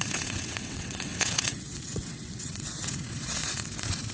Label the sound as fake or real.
fake